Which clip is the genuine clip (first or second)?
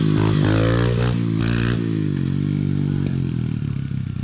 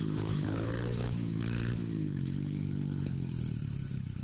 first